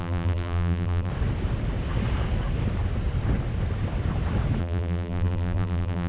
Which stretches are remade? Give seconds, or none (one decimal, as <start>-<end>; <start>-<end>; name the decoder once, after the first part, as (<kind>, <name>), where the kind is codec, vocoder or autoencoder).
0.0-1.1 (vocoder, BigVGAN v2); 4.6-6.1

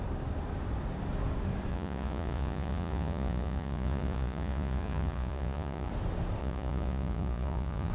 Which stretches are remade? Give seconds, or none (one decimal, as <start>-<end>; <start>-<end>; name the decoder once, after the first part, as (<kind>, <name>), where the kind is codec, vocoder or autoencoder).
1.7-5.9 (vocoder, Vocos); 6.4-7.9

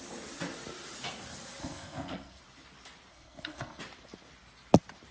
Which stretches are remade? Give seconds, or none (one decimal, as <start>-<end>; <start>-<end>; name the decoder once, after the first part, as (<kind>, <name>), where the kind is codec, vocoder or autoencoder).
1.6-2.4 (codec, SNAC); 3.1-3.8

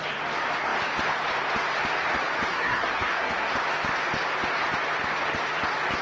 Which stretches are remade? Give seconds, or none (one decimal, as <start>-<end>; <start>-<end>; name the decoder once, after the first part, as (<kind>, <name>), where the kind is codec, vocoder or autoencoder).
2.5-3.5 (codec, SNAC)

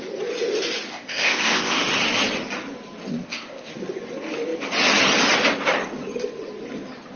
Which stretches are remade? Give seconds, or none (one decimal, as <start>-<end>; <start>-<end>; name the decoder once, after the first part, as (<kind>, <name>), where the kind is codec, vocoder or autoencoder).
0.9-1.8 (codec, ZipCodec); 3.1-3.7

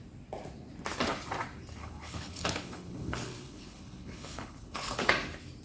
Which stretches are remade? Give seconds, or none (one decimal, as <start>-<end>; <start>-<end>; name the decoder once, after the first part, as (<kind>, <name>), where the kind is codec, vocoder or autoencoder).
1.8-5.1 (codec, HILCodec)